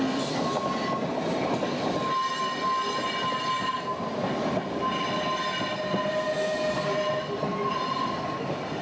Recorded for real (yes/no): yes